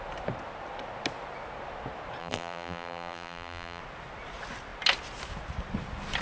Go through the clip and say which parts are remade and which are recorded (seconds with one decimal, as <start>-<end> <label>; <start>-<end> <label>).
0.0-2.2 recorded; 2.2-3.8 remade; 3.8-6.2 recorded